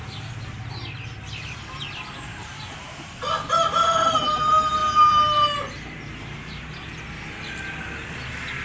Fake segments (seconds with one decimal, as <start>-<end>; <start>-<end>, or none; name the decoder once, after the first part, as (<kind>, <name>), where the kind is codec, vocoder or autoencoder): 2.3-2.9 (vocoder, BigVGAN v2); 4.8-6.6